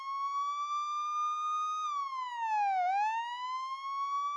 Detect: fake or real real